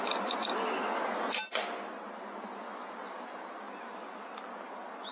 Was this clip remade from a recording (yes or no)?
no